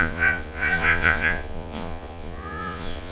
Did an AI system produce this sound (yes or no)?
yes